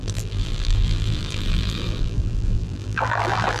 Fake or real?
fake